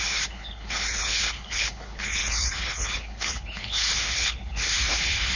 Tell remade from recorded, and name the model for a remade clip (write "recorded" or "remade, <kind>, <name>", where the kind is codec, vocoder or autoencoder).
remade, codec, HILCodec